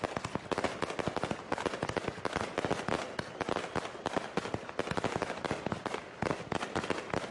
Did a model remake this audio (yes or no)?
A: no